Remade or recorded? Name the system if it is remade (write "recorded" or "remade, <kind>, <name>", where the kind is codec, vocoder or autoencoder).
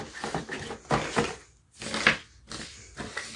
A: recorded